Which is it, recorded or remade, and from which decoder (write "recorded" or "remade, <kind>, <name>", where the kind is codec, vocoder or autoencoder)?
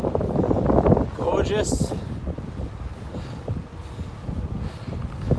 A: recorded